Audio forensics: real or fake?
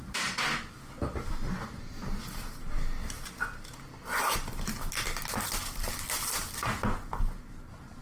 real